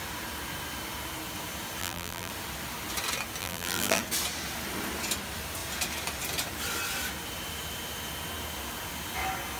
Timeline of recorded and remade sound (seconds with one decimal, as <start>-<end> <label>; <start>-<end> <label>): 0.0-1.8 recorded; 1.8-2.3 remade; 2.3-3.4 recorded; 3.4-4.0 remade; 4.0-9.6 recorded